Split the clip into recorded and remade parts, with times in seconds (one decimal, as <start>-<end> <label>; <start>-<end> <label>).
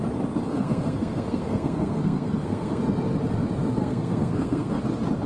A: 0.0-0.5 recorded; 0.5-2.8 remade; 2.8-3.8 recorded; 3.8-4.8 remade; 4.8-5.3 recorded